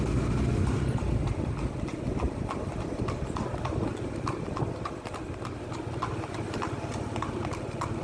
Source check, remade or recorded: recorded